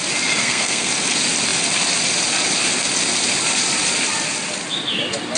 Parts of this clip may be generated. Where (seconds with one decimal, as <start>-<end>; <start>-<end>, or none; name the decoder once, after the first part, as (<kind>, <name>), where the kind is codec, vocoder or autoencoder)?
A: 0.4-0.9 (codec, SNAC)